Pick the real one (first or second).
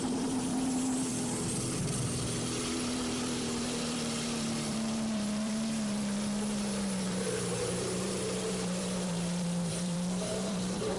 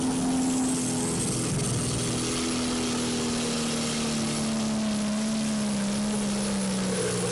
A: second